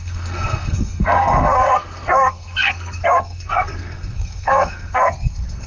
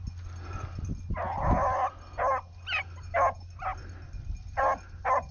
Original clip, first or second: second